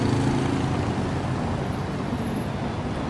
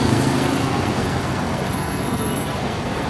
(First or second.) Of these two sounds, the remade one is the second